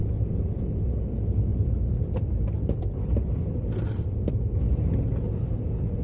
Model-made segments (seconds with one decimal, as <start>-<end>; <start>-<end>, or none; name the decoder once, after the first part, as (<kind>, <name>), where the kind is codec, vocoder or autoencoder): 0.0-0.9 (vocoder, BigVGAN v2); 1.5-4.3